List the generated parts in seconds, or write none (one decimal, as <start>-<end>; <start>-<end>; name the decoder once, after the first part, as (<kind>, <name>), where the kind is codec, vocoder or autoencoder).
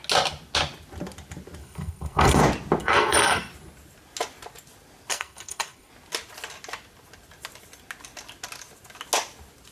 1.6-2.4 (codec, SNAC); 2.8-3.5; 5.1-5.9